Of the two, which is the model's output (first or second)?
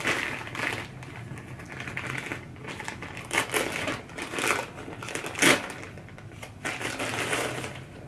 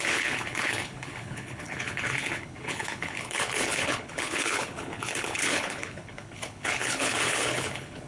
second